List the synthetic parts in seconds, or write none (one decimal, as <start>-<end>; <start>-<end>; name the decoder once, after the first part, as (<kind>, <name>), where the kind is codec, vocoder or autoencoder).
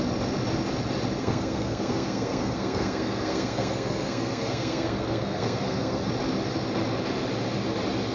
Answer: 1.2-6.1 (codec, SNAC)